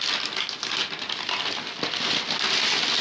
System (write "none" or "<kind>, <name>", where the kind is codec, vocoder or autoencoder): none